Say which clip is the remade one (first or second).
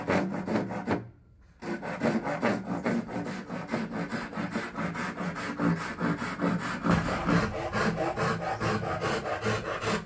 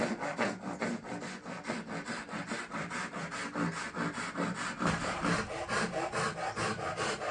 second